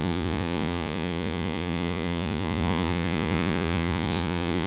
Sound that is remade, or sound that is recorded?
remade